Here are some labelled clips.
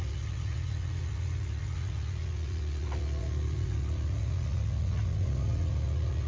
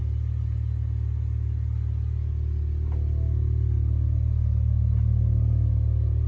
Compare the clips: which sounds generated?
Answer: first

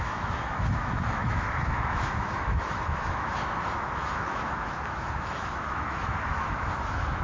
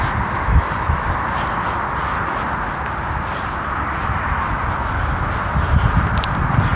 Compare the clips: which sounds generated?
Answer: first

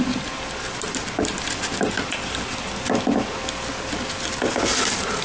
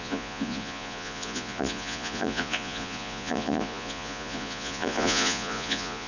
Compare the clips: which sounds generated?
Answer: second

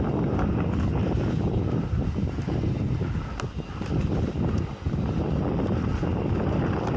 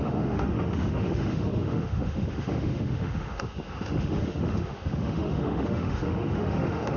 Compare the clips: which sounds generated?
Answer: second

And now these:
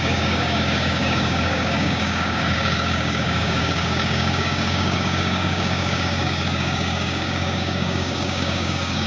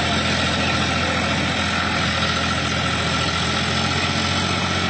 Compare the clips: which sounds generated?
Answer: first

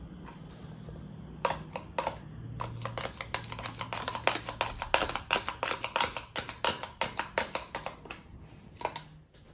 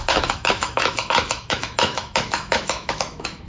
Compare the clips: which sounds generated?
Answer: second